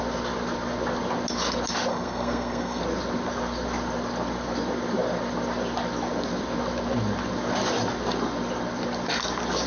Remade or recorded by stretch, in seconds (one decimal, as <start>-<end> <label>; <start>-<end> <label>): 0.0-1.9 recorded; 1.9-2.8 remade; 2.8-9.7 recorded